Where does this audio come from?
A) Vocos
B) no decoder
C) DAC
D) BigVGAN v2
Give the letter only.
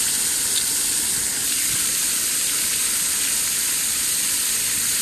D